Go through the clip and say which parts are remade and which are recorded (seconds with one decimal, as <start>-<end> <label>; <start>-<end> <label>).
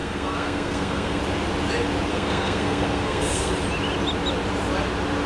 0.0-1.2 remade; 1.2-2.1 recorded; 2.1-3.5 remade; 3.5-5.3 recorded